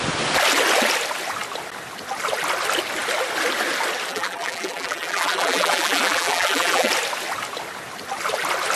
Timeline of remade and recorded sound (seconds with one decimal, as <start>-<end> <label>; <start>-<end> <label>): 0.0-4.1 recorded; 4.1-6.9 remade; 6.9-8.8 recorded